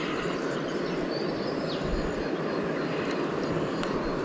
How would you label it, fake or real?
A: real